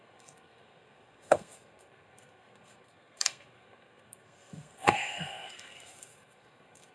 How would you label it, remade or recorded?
remade